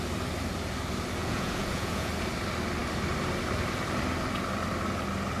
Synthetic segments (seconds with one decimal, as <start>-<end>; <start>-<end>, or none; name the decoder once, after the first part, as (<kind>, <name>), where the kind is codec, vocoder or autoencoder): 1.2-2.1 (vocoder, Vocos)